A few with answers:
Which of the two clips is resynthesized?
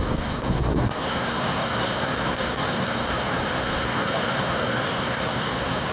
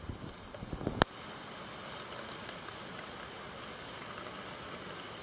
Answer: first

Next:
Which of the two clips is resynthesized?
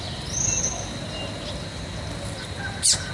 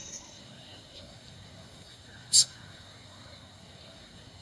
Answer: second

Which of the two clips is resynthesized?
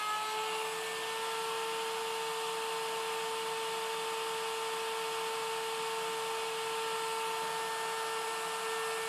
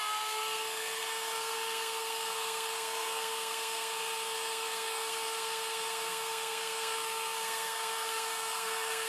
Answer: second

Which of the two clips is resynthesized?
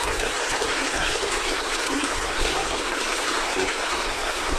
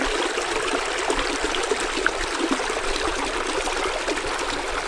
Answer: first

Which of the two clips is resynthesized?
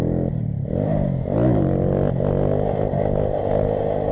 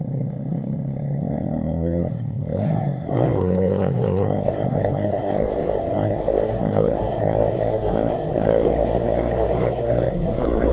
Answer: second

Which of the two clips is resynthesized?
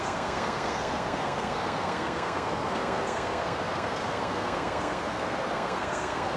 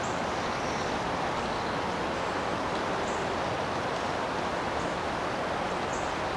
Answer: first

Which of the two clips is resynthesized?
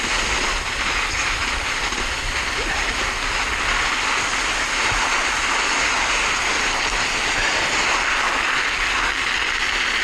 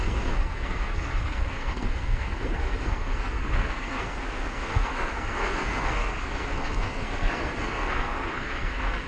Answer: second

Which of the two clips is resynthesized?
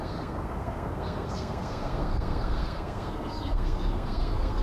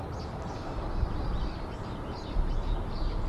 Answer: first